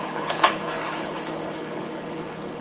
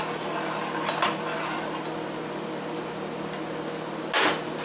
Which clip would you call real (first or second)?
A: second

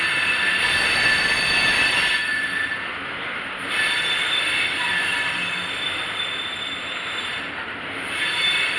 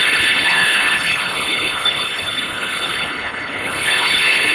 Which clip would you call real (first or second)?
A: first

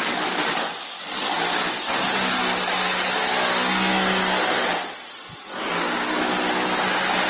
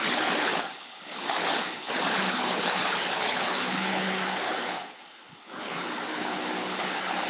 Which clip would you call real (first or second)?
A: first